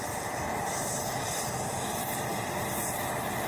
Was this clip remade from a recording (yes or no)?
no